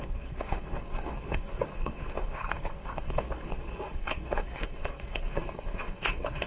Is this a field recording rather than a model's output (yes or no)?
no